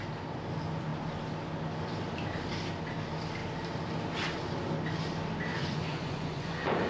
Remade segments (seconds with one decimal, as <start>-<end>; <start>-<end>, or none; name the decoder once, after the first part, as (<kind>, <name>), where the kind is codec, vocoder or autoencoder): 5.5-6.9 (vocoder, Vocos)